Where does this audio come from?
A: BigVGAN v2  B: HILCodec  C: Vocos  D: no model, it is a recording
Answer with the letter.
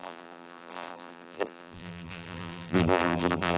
A